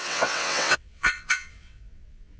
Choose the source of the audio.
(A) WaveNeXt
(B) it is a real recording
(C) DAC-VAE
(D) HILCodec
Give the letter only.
A